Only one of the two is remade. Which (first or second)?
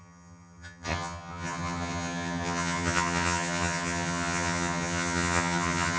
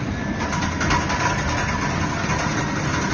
first